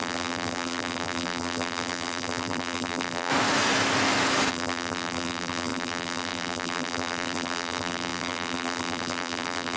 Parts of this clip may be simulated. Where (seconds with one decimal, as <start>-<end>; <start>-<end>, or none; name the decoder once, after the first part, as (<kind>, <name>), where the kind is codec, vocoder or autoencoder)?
0.0-3.3 (vocoder, BigVGAN v2); 4.5-9.8

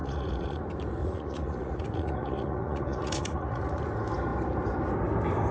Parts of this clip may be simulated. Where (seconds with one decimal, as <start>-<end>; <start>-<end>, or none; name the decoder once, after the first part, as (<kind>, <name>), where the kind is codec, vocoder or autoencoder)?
0.0-0.6 (vocoder, Vocos); 1.0-3.8

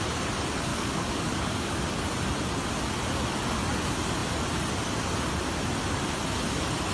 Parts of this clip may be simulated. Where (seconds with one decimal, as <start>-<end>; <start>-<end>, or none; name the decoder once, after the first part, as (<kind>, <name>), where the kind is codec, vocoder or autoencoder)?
0.7-1.8 (codec, DAC)

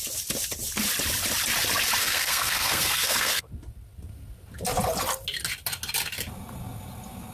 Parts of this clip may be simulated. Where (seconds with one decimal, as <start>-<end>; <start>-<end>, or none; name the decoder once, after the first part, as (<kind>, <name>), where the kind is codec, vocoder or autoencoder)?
2.0-3.5 (codec, SNAC)

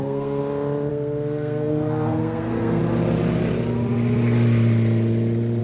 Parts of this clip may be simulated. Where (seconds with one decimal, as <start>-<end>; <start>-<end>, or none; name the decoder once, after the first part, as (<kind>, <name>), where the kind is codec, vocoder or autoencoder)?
0.0-0.4 (codec, SNAC); 0.9-2.8

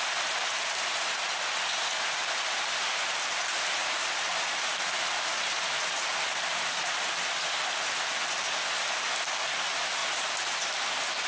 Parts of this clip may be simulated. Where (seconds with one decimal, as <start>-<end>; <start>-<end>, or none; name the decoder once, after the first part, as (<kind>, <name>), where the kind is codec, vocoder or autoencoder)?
none

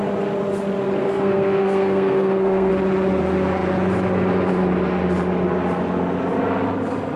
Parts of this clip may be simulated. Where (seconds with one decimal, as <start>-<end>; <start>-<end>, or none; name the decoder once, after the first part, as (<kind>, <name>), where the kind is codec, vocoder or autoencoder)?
1.0-2.7 (codec, SNAC)

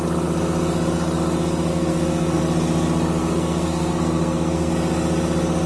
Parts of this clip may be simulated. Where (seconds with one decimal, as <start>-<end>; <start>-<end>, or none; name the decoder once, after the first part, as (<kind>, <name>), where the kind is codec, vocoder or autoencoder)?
1.7-2.4 (codec, SNAC); 3.2-4.7